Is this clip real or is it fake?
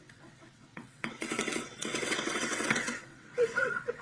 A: fake